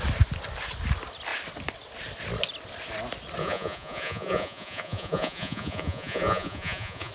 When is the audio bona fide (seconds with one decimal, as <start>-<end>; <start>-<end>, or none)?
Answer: 0.0-3.4